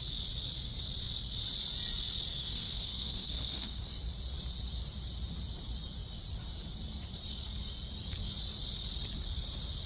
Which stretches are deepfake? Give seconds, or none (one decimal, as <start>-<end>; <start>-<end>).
2.3-3.8